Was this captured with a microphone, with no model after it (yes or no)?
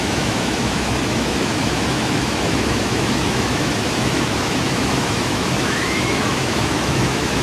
no